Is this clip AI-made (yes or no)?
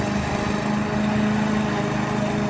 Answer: no